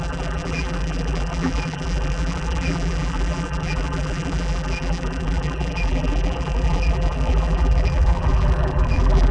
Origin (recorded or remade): remade